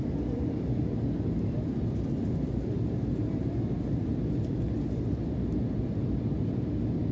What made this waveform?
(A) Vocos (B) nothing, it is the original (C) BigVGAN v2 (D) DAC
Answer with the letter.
B